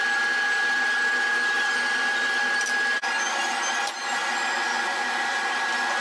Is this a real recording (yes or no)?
yes